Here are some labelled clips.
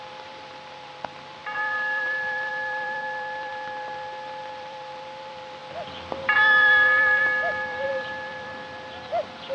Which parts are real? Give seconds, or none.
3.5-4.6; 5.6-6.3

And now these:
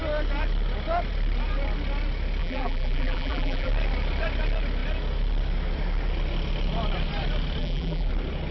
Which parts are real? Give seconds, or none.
0.0-2.4; 3.7-7.6; 8.1-8.5

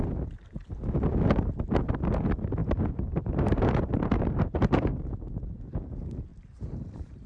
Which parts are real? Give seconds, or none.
0.0-2.6; 4.9-6.3